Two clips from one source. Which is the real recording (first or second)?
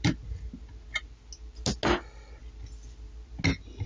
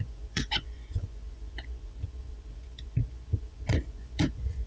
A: first